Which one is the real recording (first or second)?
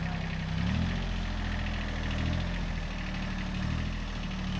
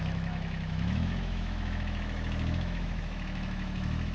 first